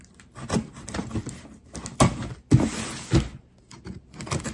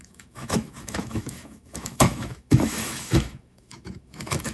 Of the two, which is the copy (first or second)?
second